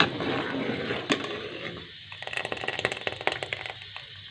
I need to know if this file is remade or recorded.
recorded